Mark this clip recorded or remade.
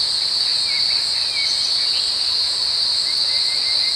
recorded